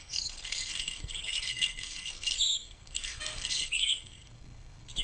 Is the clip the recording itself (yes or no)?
no